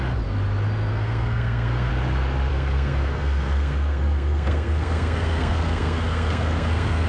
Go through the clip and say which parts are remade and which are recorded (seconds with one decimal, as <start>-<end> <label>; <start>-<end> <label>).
0.0-0.9 recorded; 0.9-1.9 remade; 1.9-2.5 recorded; 2.5-7.1 remade